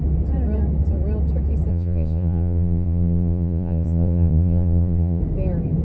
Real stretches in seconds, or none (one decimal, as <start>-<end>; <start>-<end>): 0.0-1.7; 5.2-5.8